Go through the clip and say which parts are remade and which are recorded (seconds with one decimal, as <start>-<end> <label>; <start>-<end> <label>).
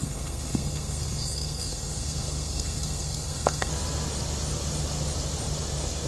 0.0-3.7 remade; 3.7-6.1 recorded